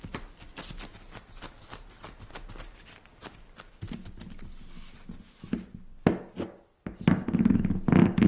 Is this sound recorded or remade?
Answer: recorded